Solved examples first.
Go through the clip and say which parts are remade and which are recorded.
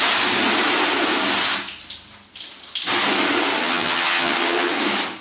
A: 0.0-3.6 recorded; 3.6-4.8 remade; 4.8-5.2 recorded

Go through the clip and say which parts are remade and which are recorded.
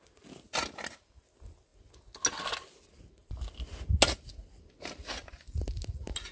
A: 0.0-6.3 recorded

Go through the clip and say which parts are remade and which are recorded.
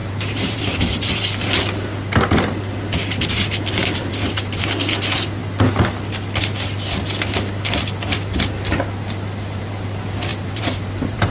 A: 0.0-1.2 remade; 1.2-3.8 recorded; 3.8-4.6 remade; 4.6-10.3 recorded; 10.3-11.3 remade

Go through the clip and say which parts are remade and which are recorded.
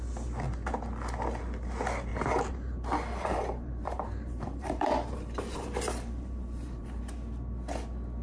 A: 0.0-2.1 recorded; 2.1-7.0 remade; 7.0-8.2 recorded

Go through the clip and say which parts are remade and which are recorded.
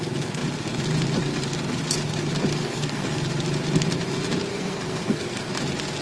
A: 0.0-2.6 recorded; 2.6-3.2 remade; 3.2-4.5 recorded; 4.5-5.5 remade; 5.5-6.0 recorded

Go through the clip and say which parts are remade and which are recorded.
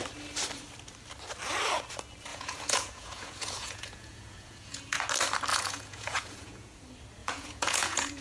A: 0.0-2.3 recorded; 2.3-5.1 remade; 5.1-5.5 recorded; 5.5-6.8 remade; 6.8-7.2 recorded; 7.2-8.2 remade